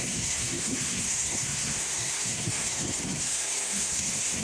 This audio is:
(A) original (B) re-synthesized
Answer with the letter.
B